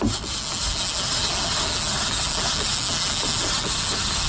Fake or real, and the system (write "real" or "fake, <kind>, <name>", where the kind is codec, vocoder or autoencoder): real